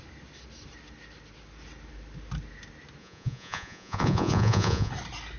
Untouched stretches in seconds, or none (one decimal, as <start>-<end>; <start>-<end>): 0.0-3.0; 4.9-5.4